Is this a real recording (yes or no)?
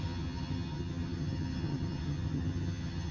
no